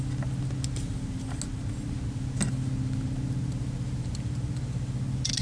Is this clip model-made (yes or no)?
no